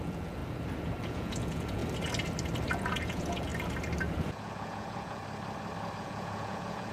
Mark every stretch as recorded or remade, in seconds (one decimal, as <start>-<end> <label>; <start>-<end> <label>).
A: 0.0-0.4 remade; 0.4-1.0 recorded; 1.0-1.8 remade; 1.8-2.7 recorded; 2.7-3.5 remade; 3.5-4.1 recorded; 4.1-5.2 remade; 5.2-6.0 recorded; 6.0-6.9 remade